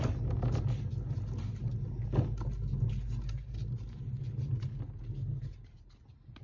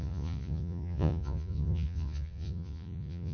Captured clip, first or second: first